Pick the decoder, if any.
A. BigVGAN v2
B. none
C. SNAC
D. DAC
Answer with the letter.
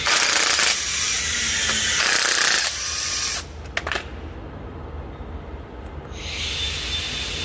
B